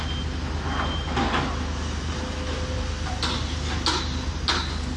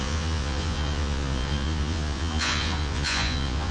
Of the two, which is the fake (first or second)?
second